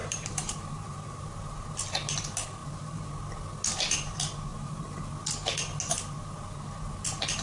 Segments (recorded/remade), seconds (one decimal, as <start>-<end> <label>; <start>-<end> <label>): 0.0-1.6 remade; 1.6-2.6 recorded; 2.6-3.1 remade; 3.1-4.5 recorded; 4.5-5.1 remade; 5.1-7.4 recorded